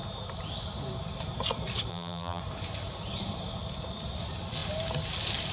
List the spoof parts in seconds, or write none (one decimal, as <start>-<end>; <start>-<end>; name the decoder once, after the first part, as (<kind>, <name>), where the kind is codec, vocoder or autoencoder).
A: 1.9-2.4 (vocoder, BigVGAN v2)